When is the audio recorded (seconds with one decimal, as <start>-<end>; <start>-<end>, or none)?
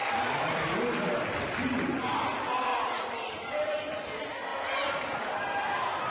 0.8-2.7; 3.8-6.1